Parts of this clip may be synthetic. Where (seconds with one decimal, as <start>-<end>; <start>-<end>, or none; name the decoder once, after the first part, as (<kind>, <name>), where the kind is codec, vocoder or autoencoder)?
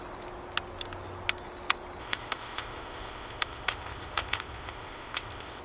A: 2.0-5.6 (codec, ZipCodec)